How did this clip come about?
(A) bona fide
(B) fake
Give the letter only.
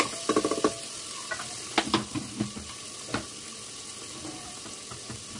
A